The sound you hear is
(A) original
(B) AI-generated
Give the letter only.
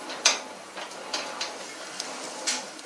B